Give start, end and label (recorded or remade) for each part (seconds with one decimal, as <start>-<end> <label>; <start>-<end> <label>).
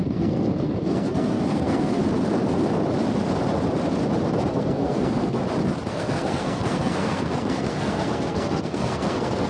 0.0-2.0 remade; 2.0-4.5 recorded; 4.5-5.4 remade; 5.4-5.9 recorded; 5.9-9.5 remade